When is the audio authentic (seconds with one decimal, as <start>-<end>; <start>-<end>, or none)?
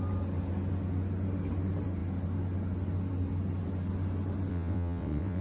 0.0-4.5